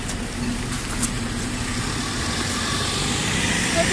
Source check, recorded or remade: recorded